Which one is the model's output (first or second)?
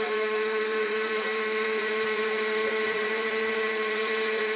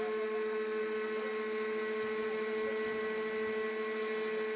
first